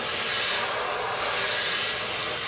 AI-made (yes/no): no